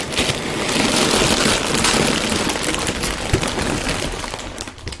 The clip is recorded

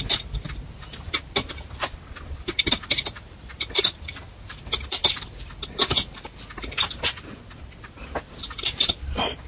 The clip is recorded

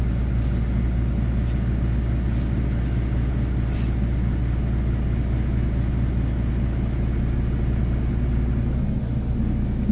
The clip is recorded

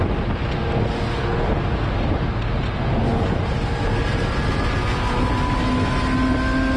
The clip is recorded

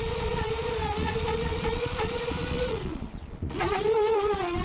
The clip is remade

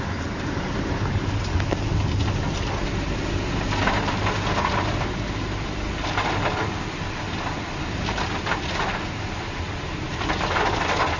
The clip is recorded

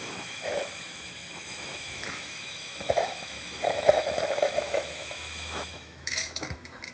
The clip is remade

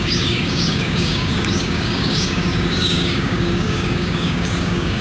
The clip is remade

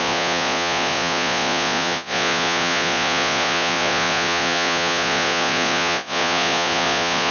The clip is remade